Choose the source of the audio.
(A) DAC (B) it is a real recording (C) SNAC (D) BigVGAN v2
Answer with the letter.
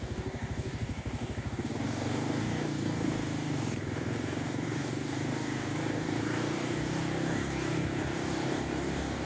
A